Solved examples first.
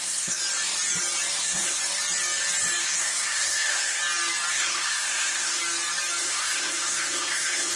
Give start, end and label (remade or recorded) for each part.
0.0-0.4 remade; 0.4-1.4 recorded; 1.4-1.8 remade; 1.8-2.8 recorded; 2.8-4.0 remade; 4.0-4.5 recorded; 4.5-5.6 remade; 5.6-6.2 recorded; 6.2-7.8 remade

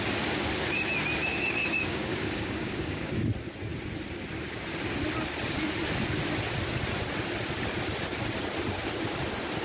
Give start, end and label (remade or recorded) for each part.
0.0-1.3 recorded; 1.3-3.2 remade; 3.2-9.6 recorded

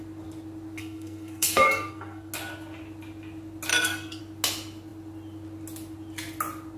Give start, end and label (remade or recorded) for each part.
0.0-0.8 recorded; 0.8-2.3 remade; 2.3-3.7 recorded; 3.7-4.2 remade; 4.2-6.8 recorded

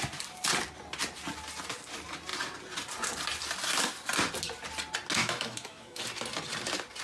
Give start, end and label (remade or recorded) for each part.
0.0-5.2 recorded; 5.2-6.0 remade; 6.0-7.0 recorded